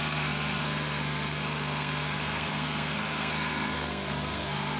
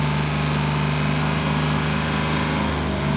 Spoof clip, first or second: first